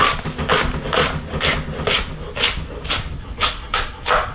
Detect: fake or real real